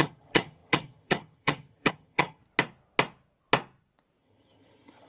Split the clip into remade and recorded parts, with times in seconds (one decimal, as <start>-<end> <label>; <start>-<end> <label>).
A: 0.0-2.4 remade; 2.4-4.2 recorded; 4.2-5.1 remade